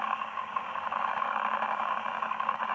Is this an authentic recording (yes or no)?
no